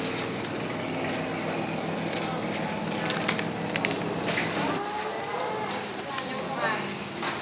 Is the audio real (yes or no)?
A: yes